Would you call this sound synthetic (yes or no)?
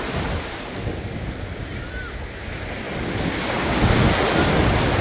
no